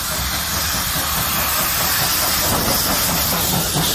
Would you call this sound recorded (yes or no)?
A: yes